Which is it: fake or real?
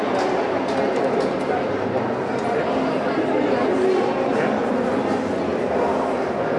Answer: real